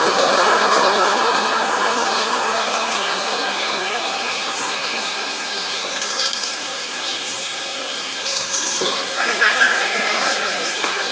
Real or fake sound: fake